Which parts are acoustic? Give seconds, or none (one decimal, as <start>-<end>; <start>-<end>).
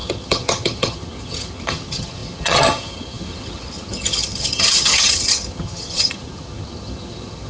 none